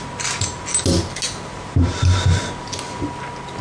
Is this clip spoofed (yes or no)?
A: no